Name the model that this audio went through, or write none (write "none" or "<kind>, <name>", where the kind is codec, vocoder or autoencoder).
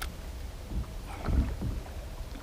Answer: none